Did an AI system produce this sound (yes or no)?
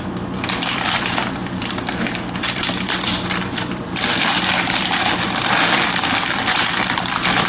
yes